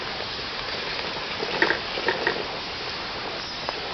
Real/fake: real